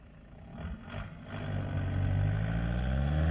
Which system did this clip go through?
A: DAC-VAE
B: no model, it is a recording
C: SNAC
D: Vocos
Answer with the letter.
B